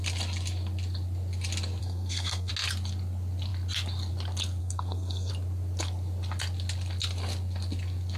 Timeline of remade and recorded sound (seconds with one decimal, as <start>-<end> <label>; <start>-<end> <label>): 0.0-1.8 recorded; 1.8-2.5 remade; 2.5-4.6 recorded; 4.6-5.3 remade; 5.3-8.2 recorded